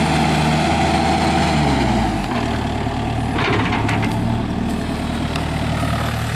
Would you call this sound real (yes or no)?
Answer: yes